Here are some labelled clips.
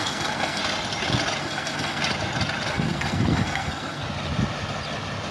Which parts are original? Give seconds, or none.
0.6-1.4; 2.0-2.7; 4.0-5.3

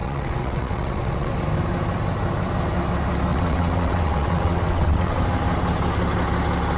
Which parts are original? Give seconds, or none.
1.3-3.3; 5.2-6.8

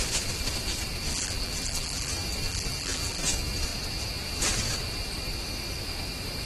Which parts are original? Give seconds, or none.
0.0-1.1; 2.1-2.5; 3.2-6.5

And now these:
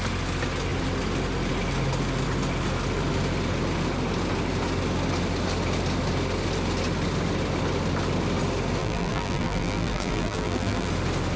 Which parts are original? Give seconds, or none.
0.0-8.8; 10.9-11.4